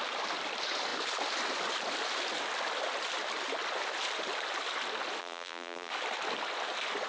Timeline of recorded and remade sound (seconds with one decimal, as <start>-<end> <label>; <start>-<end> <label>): 0.0-5.2 recorded; 5.2-5.9 remade; 5.9-7.1 recorded